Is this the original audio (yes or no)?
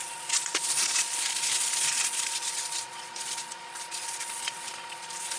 no